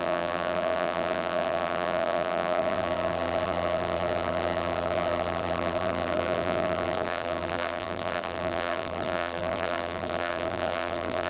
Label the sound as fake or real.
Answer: fake